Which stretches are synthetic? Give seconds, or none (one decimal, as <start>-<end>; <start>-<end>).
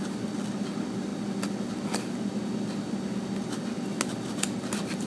none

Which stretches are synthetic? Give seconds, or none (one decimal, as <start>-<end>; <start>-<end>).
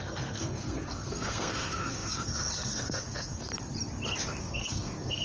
0.0-3.5; 4.4-5.2